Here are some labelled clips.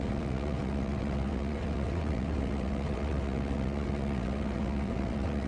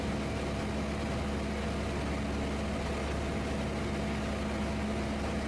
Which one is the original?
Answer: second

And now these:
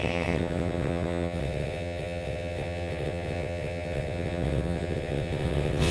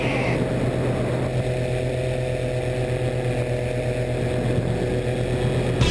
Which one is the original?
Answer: second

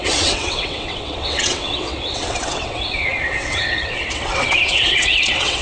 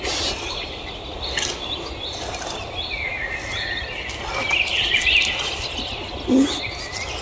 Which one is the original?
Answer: second